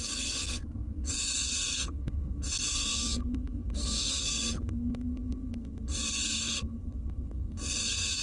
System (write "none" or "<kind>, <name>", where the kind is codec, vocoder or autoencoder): codec, SNAC